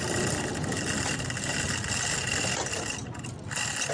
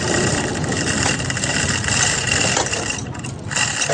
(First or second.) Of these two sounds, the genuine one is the first